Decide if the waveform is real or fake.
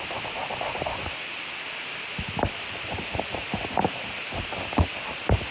real